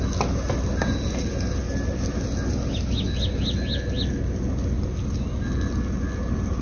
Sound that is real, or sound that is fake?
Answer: real